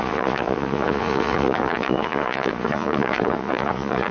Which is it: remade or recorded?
remade